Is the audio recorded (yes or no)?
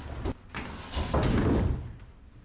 yes